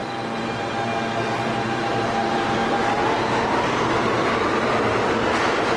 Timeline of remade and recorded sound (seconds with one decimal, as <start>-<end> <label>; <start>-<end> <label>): 0.0-5.8 recorded